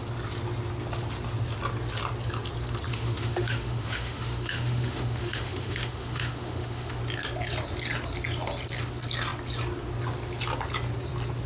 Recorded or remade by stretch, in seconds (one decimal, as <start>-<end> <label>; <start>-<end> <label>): 0.0-2.9 recorded; 2.9-7.0 remade; 7.0-11.5 recorded